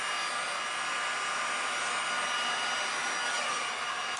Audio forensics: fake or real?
real